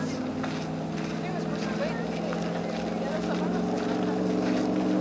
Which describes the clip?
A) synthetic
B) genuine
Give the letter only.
B